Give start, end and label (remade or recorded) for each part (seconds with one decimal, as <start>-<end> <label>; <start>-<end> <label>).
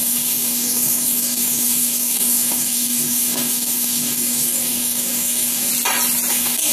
0.0-5.7 remade; 5.7-6.3 recorded; 6.3-6.7 remade